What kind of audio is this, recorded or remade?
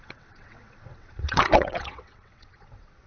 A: remade